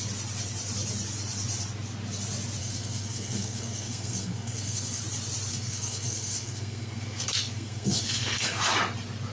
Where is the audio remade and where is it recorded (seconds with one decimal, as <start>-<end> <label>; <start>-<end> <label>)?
0.0-2.6 recorded; 2.6-5.0 remade; 5.0-5.5 recorded; 5.5-8.6 remade; 8.6-9.3 recorded